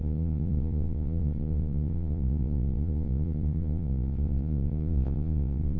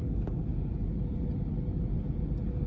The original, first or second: second